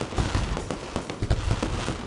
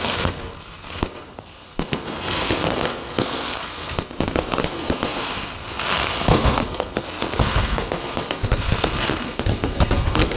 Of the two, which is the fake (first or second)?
second